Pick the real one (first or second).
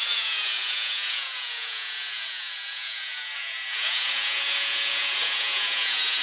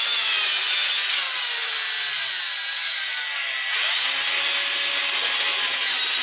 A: second